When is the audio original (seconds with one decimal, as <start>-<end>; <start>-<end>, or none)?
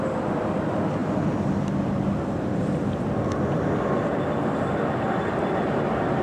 0.0-6.2